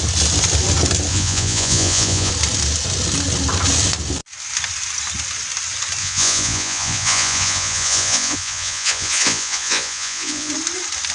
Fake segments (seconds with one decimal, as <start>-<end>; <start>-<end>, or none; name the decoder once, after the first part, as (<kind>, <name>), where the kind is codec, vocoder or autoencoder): 1.1-2.3 (vocoder, Vocos); 6.0-10.5